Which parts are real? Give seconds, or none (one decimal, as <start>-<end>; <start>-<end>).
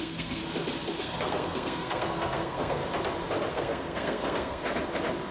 0.4-1.0; 2.8-3.5; 4.6-5.3